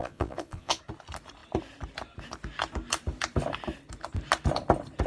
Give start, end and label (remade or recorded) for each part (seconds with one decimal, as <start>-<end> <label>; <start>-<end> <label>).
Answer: 0.0-0.8 remade; 0.8-5.1 recorded

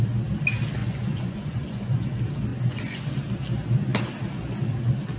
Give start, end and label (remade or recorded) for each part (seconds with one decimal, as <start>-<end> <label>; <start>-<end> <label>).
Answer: 0.0-0.8 recorded; 0.8-2.1 remade; 2.1-2.5 recorded; 2.5-3.0 remade; 3.0-5.2 recorded

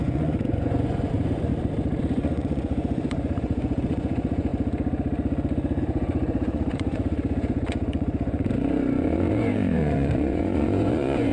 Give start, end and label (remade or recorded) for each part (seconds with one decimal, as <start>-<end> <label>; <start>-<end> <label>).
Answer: 0.0-1.5 remade; 1.5-2.0 recorded; 2.0-4.5 remade; 4.5-5.8 recorded; 5.8-11.3 remade

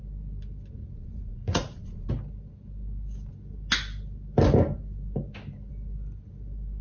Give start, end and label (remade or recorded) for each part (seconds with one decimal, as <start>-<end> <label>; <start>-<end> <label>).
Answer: 0.0-0.8 recorded; 0.8-2.1 remade; 2.1-6.8 recorded

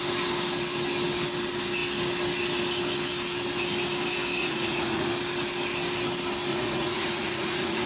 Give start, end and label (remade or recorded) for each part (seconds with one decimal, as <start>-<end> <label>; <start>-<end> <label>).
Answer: 0.0-4.4 recorded; 4.4-5.1 remade; 5.1-6.5 recorded; 6.5-7.9 remade

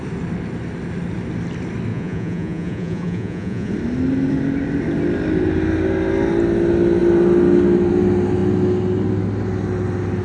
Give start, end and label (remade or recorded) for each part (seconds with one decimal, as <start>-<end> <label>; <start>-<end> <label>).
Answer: 0.0-1.9 recorded; 1.9-3.7 remade; 3.7-10.2 recorded

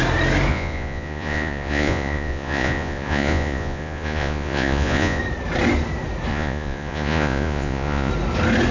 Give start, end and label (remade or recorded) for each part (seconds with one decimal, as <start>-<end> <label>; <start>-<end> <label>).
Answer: 0.0-0.5 recorded; 0.5-5.2 remade; 5.2-6.3 recorded; 6.3-8.1 remade; 8.1-8.7 recorded

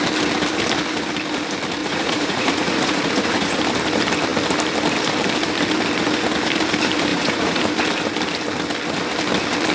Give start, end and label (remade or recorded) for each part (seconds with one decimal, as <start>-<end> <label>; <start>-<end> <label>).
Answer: 0.0-1.8 recorded; 1.8-3.6 remade; 3.6-7.1 recorded; 7.1-7.6 remade; 7.6-9.7 recorded